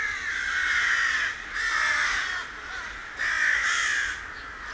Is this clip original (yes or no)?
yes